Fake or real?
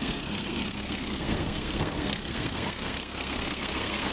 fake